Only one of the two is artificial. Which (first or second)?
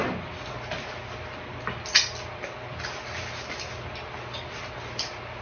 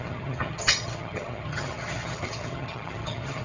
second